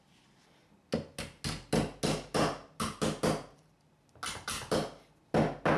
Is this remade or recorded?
recorded